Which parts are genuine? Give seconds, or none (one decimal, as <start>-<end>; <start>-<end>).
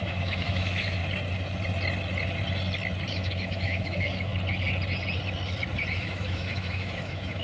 1.0-3.1; 4.3-5.9